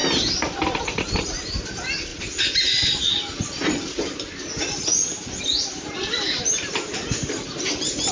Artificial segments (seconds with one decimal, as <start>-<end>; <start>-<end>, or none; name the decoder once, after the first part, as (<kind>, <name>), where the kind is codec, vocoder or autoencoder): 0.8-2.1 (vocoder, BigVGAN v2); 5.4-8.1